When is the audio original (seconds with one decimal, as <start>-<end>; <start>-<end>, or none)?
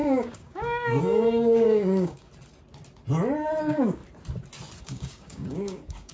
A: 2.3-3.6; 4.0-4.8